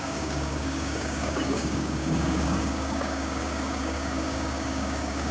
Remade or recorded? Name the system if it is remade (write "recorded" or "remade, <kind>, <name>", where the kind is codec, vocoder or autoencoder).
remade, codec, DAC